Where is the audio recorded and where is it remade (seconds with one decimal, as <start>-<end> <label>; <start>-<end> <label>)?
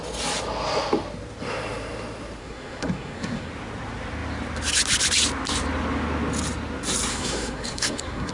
0.0-2.4 recorded; 2.4-3.5 remade; 3.5-7.1 recorded; 7.1-8.3 remade